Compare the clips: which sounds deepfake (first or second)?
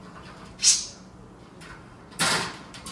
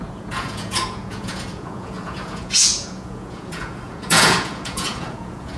second